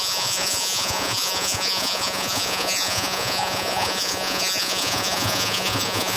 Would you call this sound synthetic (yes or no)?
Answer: yes